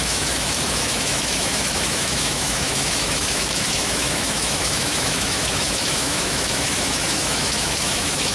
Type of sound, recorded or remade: remade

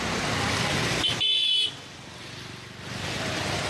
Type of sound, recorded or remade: recorded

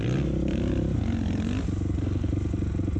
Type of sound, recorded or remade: recorded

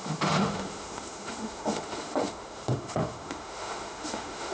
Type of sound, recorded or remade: remade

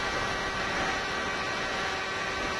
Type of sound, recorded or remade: recorded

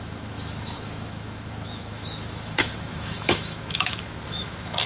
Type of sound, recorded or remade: remade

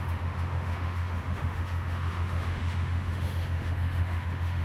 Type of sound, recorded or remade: remade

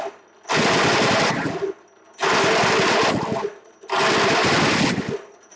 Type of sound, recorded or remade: recorded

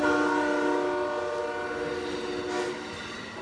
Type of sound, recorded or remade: recorded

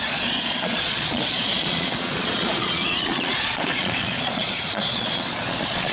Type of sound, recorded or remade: remade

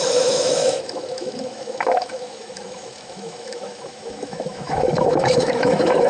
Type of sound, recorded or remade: remade